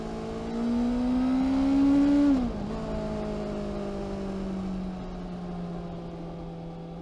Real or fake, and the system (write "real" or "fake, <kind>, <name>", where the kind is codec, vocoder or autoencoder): real